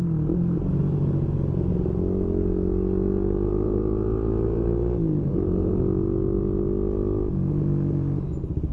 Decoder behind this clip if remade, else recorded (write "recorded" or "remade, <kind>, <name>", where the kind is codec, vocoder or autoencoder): recorded